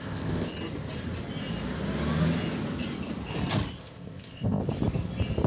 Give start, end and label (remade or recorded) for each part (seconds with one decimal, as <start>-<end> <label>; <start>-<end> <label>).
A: 0.0-0.5 remade; 0.5-3.8 recorded; 3.8-4.6 remade; 4.6-5.5 recorded